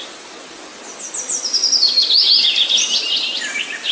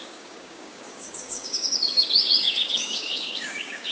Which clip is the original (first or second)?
first